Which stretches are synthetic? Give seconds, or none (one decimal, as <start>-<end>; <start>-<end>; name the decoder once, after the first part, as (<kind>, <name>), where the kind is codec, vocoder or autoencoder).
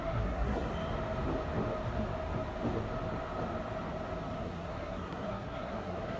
0.0-0.7 (codec, SNAC); 4.4-6.2